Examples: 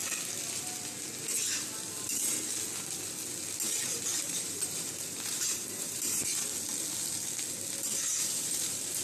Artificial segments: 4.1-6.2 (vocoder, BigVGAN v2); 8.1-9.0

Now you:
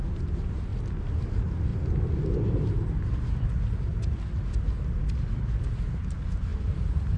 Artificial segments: 0.0-0.7 (vocoder, BigVGAN v2); 1.2-1.7; 6.0-7.2

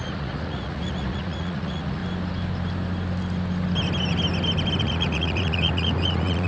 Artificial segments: 0.0-2.0 (vocoder, Vocos); 4.8-6.5

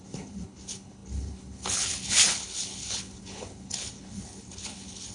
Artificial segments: 0.0-5.1 (codec, HILCodec)

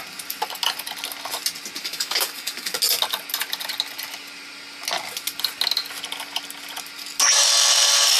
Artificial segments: 1.8-2.8 (codec, DAC)

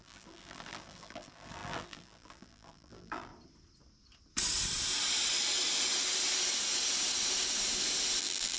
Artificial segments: 0.0-3.3 (vocoder, BigVGAN v2); 8.2-8.6